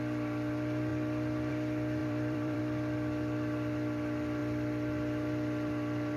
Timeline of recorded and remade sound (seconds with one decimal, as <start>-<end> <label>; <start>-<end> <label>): 0.0-2.0 recorded; 2.0-2.6 remade; 2.6-6.2 recorded